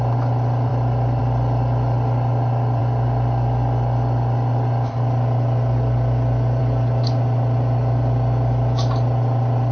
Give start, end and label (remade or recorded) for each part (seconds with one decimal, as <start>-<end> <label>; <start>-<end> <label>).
0.0-9.7 recorded